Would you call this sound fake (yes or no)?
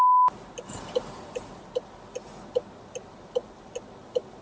no